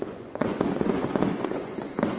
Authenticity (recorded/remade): remade